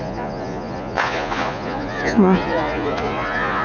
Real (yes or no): no